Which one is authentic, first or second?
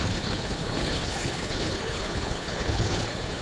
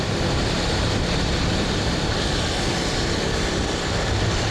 second